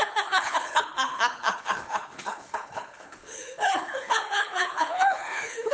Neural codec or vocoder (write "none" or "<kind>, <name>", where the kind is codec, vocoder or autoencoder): codec, HILCodec